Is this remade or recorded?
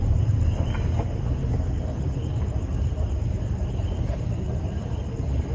recorded